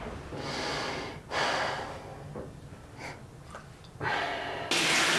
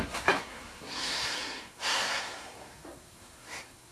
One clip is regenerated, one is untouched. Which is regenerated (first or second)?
second